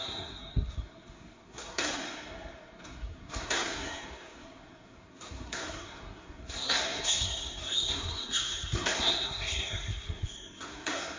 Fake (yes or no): yes